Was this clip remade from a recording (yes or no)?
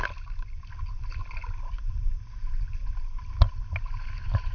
no